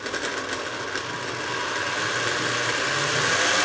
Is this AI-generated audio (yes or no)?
no